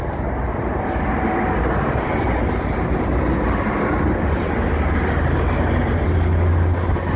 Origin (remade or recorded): recorded